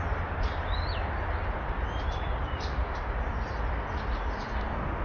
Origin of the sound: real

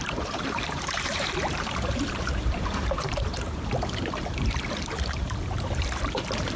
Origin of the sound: fake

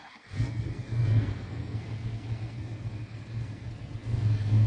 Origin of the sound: fake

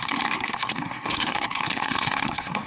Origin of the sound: fake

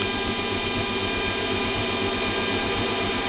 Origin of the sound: real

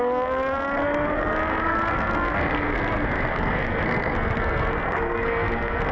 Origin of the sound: fake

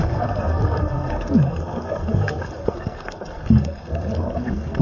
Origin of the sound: fake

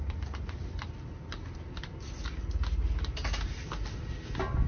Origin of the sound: real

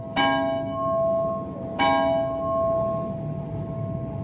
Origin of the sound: real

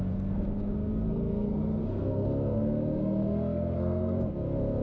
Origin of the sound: fake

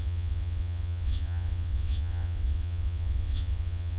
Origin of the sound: fake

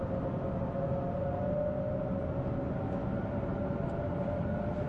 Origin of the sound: real